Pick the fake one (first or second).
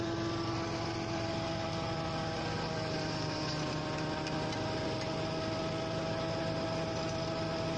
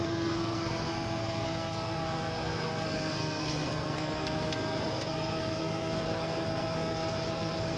second